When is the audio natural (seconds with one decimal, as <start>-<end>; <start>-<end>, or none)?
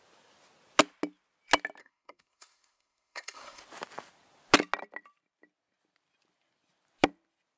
0.0-1.8; 3.6-7.6